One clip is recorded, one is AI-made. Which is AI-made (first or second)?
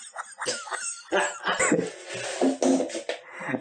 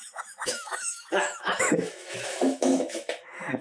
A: second